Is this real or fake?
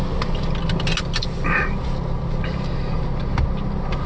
real